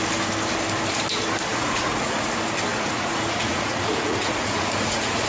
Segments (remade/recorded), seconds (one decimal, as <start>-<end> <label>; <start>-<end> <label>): 0.0-1.5 recorded; 1.5-2.3 remade; 2.3-2.7 recorded; 2.7-5.3 remade